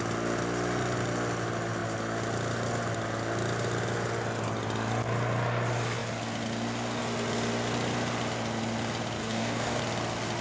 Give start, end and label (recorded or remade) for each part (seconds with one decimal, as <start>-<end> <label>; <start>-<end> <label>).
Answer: 0.0-9.2 recorded; 9.2-9.8 remade; 9.8-10.4 recorded